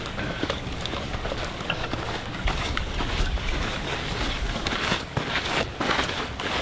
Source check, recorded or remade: remade